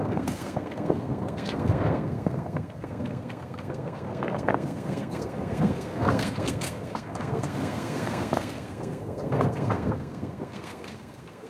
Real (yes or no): no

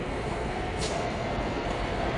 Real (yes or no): no